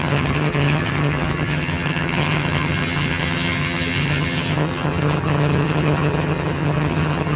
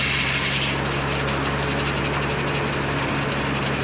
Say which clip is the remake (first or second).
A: first